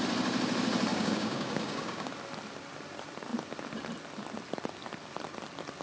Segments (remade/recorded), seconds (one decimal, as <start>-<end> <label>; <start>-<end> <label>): 0.0-0.9 recorded; 0.9-2.1 remade; 2.1-5.8 recorded